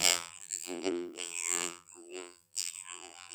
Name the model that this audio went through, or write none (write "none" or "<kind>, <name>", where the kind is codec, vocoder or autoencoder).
vocoder, BigVGAN v2